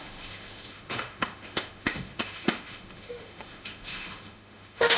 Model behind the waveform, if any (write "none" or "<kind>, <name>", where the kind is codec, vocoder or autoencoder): autoencoder, DAC-VAE